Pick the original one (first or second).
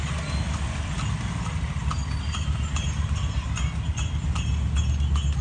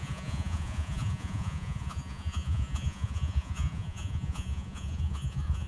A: first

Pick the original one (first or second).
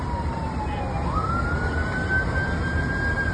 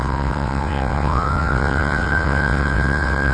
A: first